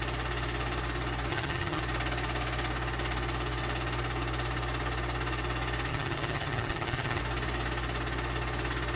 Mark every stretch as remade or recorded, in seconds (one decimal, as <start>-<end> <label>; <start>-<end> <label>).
0.0-1.3 recorded; 1.3-1.8 remade; 1.8-5.9 recorded; 5.9-7.2 remade; 7.2-9.0 recorded